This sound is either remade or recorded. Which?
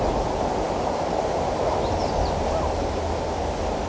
recorded